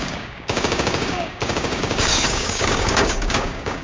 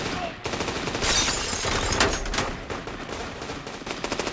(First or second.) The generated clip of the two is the first